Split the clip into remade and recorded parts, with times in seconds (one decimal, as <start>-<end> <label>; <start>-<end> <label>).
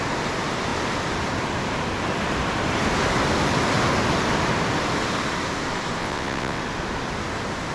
0.0-6.0 recorded; 6.0-6.6 remade; 6.6-7.7 recorded